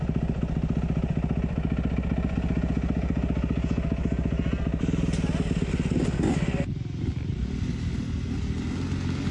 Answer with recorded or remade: recorded